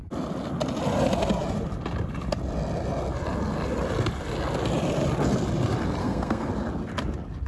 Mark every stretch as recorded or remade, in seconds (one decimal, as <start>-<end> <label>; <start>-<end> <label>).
0.0-6.0 recorded; 6.0-6.5 remade; 6.5-7.5 recorded